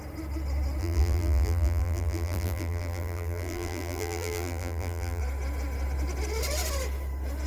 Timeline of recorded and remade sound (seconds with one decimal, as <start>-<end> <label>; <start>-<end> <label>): 0.0-0.8 recorded; 0.8-5.2 remade; 5.2-7.5 recorded